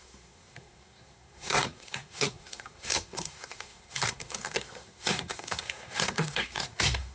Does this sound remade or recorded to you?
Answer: remade